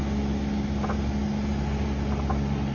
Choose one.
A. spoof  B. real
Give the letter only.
B